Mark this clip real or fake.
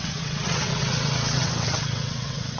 fake